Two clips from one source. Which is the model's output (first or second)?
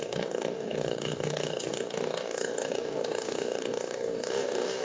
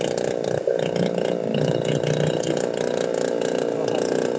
first